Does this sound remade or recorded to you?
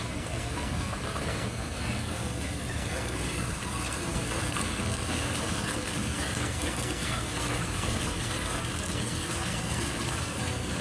remade